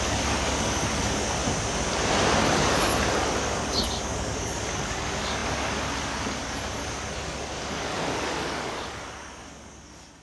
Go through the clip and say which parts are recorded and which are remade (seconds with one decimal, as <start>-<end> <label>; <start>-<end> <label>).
0.0-1.4 remade; 1.4-2.4 recorded; 2.4-10.2 remade